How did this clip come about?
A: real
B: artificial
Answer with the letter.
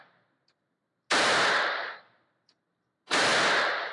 A